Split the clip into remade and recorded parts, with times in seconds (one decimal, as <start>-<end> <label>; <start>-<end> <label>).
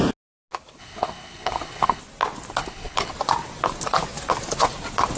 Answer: 0.0-0.8 recorded; 0.8-2.0 remade; 2.0-2.6 recorded; 2.6-3.1 remade; 3.1-5.2 recorded